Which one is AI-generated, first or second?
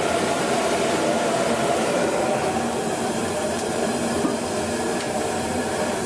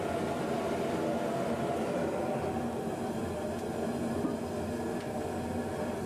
first